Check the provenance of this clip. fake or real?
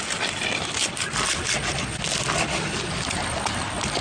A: real